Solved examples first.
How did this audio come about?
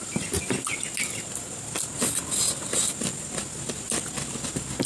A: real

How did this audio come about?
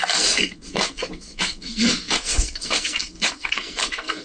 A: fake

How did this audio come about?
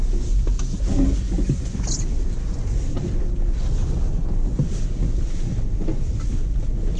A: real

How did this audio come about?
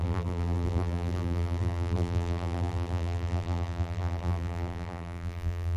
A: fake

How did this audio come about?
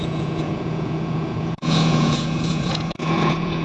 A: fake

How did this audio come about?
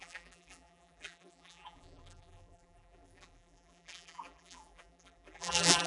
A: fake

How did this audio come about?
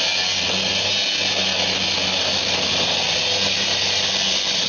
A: real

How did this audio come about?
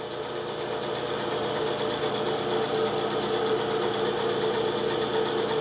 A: real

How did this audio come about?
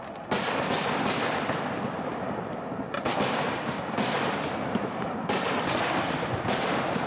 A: real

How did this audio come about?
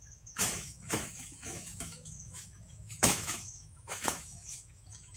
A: fake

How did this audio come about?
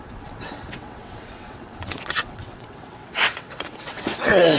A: fake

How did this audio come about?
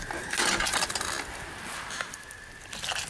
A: real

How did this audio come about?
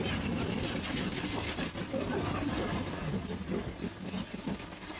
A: real